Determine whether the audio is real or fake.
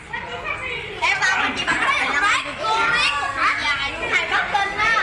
real